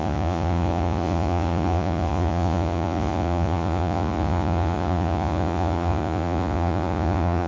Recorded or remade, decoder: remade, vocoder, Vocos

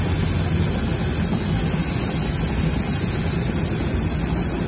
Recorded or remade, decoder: recorded